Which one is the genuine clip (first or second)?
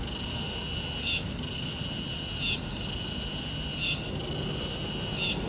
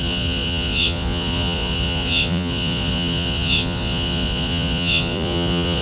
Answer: first